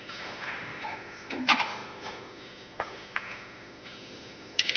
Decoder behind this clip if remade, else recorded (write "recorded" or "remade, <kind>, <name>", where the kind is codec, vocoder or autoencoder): remade, autoencoder, DAC-VAE